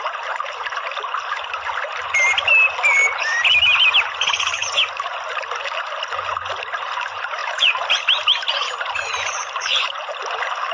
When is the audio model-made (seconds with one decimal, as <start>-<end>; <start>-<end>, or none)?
7.4-9.8